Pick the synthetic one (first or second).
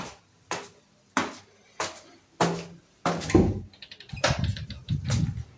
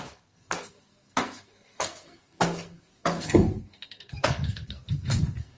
second